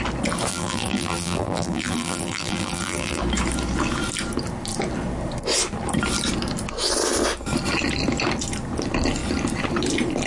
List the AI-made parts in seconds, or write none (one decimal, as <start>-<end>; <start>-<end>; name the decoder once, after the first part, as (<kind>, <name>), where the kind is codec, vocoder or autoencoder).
0.5-3.2 (vocoder, BigVGAN v2)